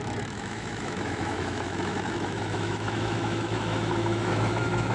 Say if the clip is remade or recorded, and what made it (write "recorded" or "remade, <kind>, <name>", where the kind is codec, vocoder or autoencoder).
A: remade, autoencoder, DAC-VAE